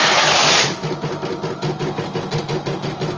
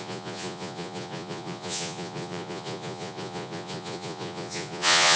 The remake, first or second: second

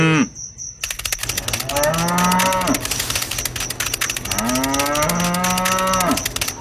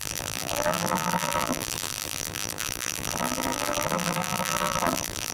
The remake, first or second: second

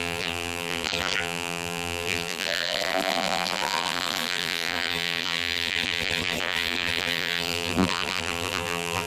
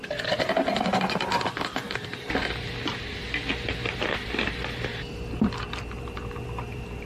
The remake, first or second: first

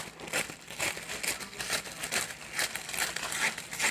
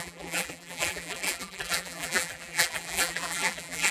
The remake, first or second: second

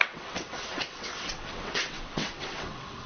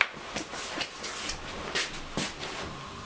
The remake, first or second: first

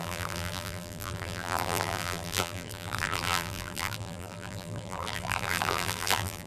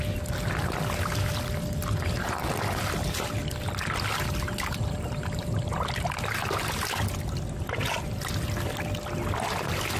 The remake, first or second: first